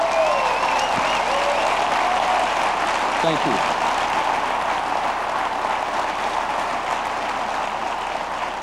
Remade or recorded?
recorded